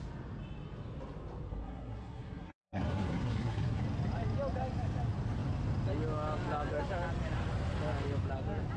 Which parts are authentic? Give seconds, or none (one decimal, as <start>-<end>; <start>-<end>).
0.0-1.5; 3.8-8.8